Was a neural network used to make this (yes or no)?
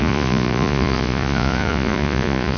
yes